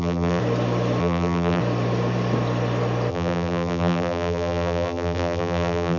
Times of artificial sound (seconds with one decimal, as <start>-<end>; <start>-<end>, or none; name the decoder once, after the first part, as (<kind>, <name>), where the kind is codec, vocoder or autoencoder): 0.0-0.4 (vocoder, BigVGAN v2); 1.0-1.6; 3.1-6.0